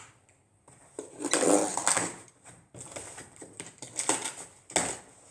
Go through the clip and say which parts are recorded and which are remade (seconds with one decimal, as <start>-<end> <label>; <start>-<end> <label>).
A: 0.0-1.7 recorded; 1.7-2.7 remade; 2.7-3.2 recorded; 3.2-3.8 remade; 3.8-5.3 recorded